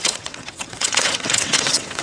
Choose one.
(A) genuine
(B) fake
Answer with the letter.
B